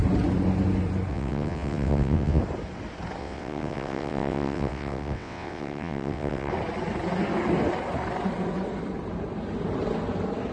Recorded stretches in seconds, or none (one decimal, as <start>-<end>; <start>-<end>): 0.0-1.1; 2.4-3.2; 6.5-10.5